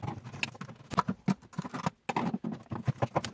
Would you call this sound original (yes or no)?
yes